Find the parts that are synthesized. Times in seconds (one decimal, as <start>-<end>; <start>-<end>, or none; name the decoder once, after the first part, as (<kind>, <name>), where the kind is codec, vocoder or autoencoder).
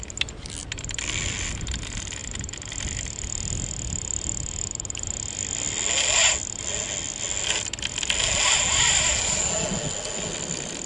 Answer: none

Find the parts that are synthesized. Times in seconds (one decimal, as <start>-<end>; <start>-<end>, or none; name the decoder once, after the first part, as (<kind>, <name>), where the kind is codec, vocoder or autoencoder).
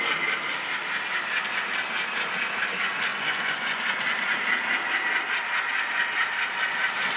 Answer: 3.1-3.8 (vocoder, Vocos)